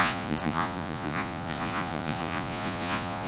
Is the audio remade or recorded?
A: remade